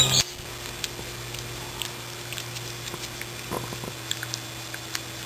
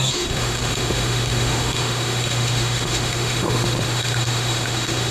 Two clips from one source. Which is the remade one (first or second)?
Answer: second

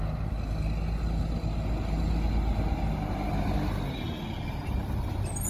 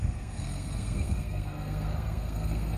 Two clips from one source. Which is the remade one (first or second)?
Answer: second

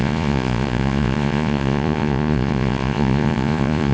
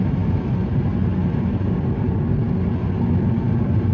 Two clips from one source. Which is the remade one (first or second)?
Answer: first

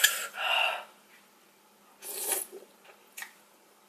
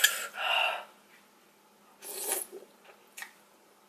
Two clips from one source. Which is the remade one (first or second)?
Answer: first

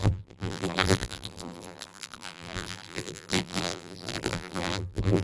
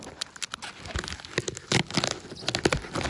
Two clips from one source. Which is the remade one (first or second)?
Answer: first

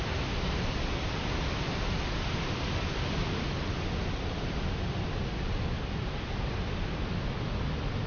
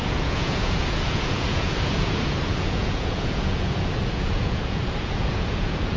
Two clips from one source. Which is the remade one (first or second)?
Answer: second